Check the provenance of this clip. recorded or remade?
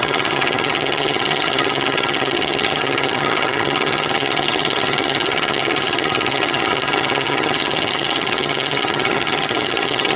remade